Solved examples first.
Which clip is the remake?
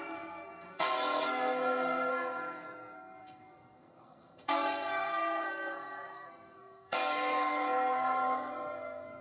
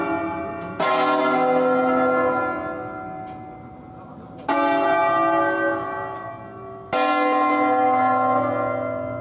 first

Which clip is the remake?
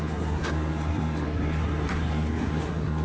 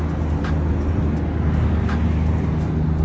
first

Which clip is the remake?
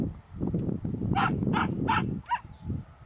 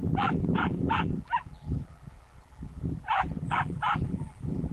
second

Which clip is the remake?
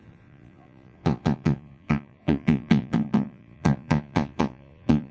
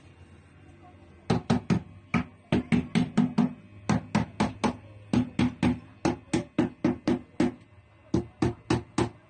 first